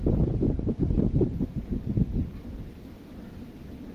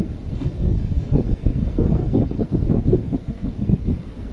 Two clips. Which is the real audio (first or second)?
first